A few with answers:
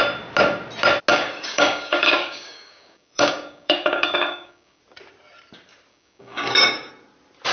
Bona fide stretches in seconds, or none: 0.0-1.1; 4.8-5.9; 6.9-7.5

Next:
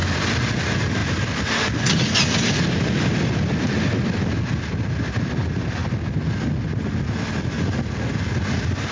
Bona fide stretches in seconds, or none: 0.0-8.9

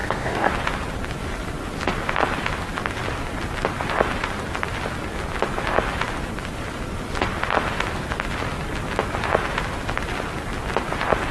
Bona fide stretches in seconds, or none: 0.5-11.3

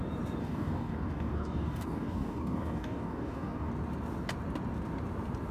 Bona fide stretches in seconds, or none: 0.0-0.4; 3.7-5.5

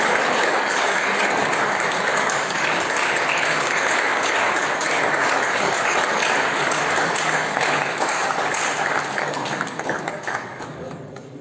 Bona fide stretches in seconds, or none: 8.6-9.1